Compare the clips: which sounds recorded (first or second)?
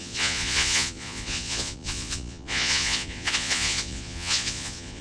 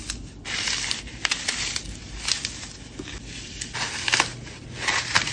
second